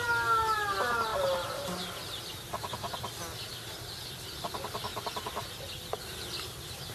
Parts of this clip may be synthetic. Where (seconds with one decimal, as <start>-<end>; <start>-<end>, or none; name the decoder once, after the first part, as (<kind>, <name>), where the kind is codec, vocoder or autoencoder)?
none